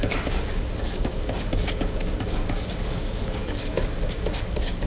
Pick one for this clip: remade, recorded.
remade